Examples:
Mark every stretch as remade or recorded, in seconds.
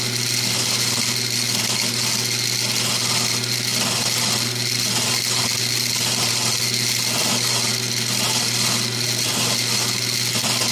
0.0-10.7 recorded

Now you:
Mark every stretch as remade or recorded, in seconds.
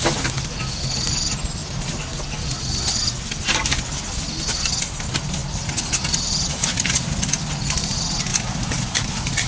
0.0-8.3 recorded; 8.3-9.5 remade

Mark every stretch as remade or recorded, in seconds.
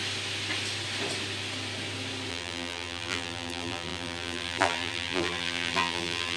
0.0-2.3 recorded; 2.3-6.4 remade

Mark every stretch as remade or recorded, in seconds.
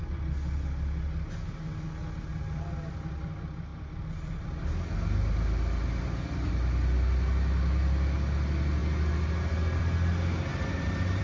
0.0-10.5 recorded; 10.5-11.2 remade